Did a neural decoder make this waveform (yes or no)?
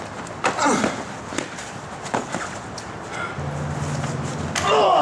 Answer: no